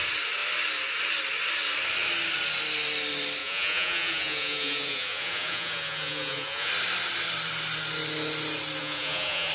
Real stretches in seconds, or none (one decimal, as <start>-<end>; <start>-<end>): 0.0-3.4; 6.7-8.8